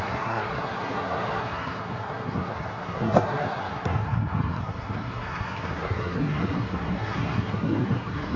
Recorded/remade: remade